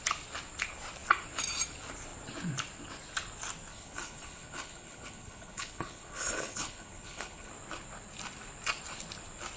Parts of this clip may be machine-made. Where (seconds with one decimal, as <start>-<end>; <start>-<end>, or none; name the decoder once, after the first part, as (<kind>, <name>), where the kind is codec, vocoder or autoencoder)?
3.7-7.5 (codec, HILCodec)